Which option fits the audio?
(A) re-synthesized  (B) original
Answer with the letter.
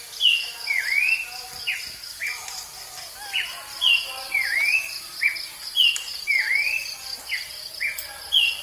B